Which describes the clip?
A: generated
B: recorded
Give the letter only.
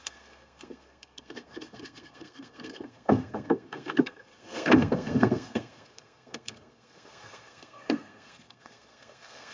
A